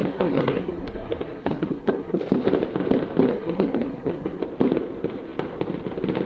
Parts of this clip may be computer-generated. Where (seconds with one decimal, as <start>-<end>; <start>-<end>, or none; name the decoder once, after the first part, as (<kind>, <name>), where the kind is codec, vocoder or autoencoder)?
0.0-2.2 (codec, SNAC); 3.3-4.4